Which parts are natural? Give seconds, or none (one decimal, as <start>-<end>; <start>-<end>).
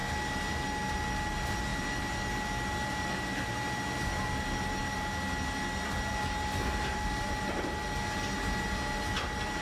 0.0-9.6